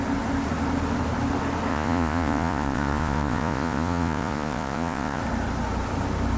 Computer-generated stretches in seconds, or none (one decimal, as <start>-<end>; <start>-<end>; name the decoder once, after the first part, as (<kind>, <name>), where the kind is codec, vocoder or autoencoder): 1.7-5.2 (vocoder, Vocos)